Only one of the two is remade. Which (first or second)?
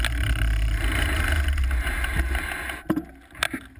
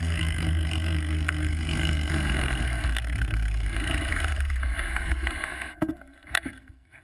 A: second